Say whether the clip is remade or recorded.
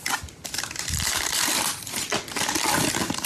remade